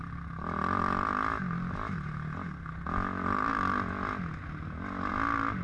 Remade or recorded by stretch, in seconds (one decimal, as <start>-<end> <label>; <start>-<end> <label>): 0.0-5.6 recorded